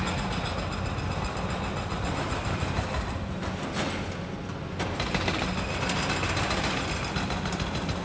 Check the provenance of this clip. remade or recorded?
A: recorded